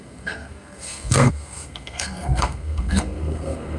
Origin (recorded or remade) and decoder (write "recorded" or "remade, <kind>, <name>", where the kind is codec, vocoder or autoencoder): remade, codec, SNAC